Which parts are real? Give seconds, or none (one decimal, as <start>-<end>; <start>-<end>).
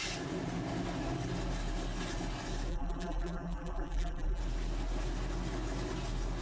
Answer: 0.0-2.7; 4.4-6.4